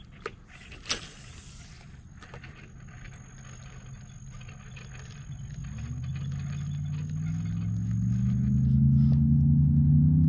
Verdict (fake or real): real